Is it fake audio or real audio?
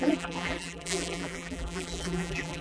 fake